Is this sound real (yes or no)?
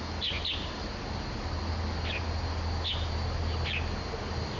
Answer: yes